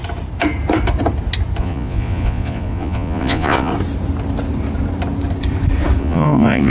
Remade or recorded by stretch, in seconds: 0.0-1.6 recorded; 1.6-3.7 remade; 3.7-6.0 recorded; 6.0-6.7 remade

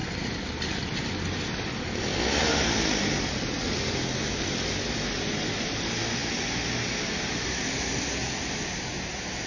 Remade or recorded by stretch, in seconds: 0.0-9.5 recorded

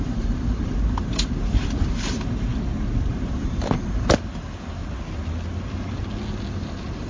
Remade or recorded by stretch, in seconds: 0.0-2.5 remade; 2.5-3.1 recorded; 3.1-4.8 remade; 4.8-6.5 recorded; 6.5-7.1 remade

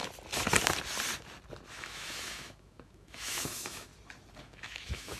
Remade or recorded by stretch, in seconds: 0.0-1.7 recorded; 1.7-3.9 remade; 3.9-4.4 recorded; 4.4-5.2 remade

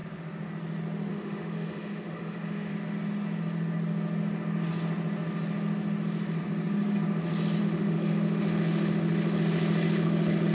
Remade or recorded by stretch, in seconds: 0.0-1.1 recorded; 1.1-2.7 remade; 2.7-7.6 recorded; 7.6-10.5 remade

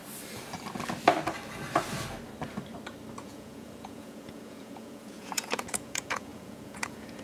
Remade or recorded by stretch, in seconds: 0.0-3.2 recorded; 3.2-7.2 remade

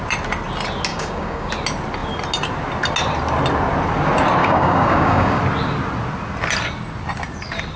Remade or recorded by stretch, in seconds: 0.0-0.9 recorded; 0.9-1.5 remade; 1.5-4.4 recorded; 4.4-5.4 remade; 5.4-7.8 recorded